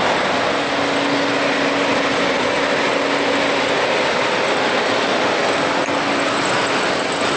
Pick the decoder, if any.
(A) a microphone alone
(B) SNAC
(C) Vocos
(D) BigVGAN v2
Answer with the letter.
A